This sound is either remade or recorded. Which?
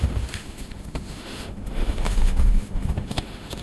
remade